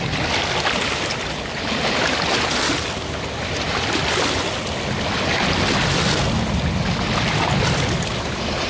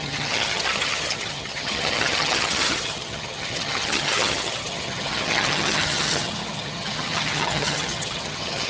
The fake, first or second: second